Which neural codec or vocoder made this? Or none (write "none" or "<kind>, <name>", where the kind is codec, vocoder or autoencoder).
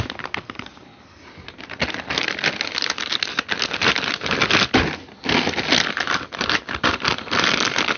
none